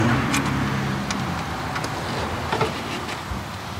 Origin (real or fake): real